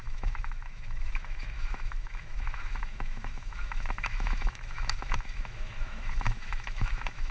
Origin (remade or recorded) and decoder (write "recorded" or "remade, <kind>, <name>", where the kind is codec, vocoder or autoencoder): remade, autoencoder, DAC-VAE